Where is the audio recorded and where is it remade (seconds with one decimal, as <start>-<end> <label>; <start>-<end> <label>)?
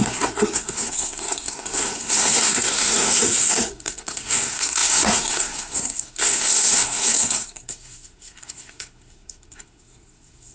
0.0-10.5 remade